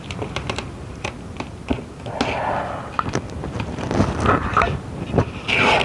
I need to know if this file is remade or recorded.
recorded